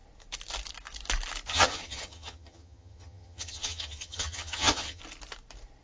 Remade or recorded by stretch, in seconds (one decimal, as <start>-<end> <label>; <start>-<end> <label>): 0.0-1.5 recorded; 1.5-5.0 remade; 5.0-5.8 recorded